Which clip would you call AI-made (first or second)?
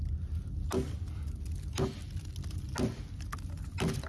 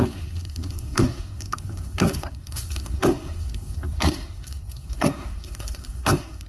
second